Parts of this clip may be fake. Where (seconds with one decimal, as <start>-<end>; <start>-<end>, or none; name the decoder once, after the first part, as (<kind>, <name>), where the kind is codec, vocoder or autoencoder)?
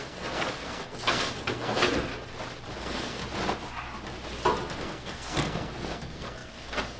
0.0-2.1 (codec, SNAC); 2.8-3.2; 4.8-7.0